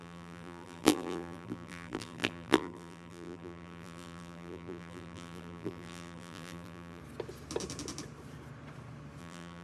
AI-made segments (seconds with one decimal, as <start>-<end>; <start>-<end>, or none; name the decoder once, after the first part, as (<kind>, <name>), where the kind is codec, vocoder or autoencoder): 0.0-7.0 (vocoder, BigVGAN v2); 9.2-9.6